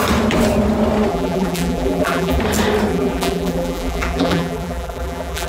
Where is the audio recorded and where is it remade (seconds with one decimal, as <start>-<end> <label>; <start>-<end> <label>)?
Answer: 0.0-1.1 recorded; 1.1-2.4 remade; 2.4-2.9 recorded; 2.9-5.5 remade